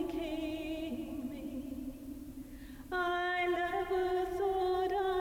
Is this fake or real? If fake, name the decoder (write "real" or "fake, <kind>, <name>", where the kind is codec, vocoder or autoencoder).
fake, vocoder, BigVGAN v2